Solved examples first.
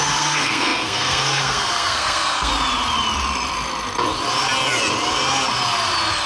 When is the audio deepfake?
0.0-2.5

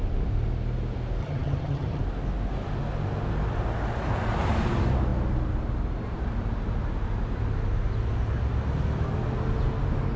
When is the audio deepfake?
1.2-2.0

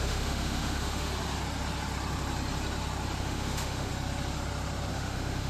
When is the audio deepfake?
0.0-1.1; 3.2-3.9; 4.9-5.5

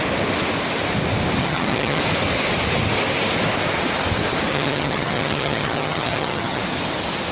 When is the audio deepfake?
1.4-2.0; 4.5-6.6

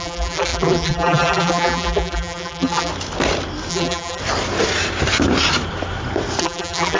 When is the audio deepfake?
0.0-2.9; 3.7-4.2; 6.4-7.0

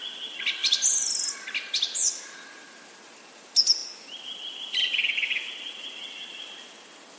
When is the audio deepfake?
none

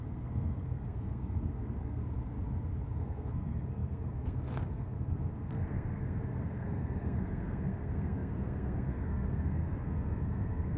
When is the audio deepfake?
0.0-2.0; 3.0-10.8